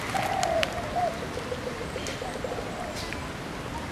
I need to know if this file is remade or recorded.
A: recorded